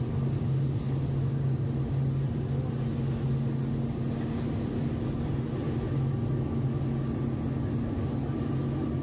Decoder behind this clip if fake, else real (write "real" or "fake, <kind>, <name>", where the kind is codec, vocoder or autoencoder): real